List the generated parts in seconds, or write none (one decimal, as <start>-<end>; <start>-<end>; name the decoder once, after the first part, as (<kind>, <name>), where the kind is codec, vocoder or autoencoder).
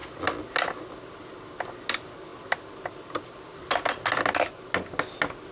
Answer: none